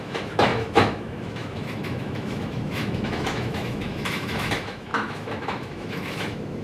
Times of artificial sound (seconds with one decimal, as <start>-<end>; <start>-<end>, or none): 0.0-6.6